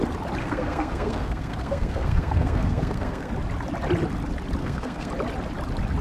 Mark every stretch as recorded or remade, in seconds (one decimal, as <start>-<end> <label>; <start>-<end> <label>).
0.0-0.4 recorded; 0.4-3.3 remade; 3.3-4.6 recorded; 4.6-5.1 remade; 5.1-6.0 recorded